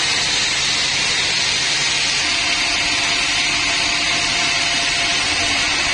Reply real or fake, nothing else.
real